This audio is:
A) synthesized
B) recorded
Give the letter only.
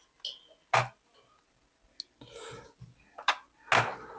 B